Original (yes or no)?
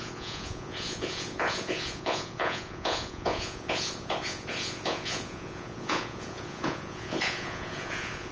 no